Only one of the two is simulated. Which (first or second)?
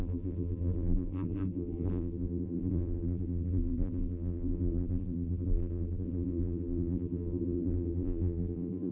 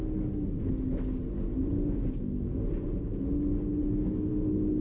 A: first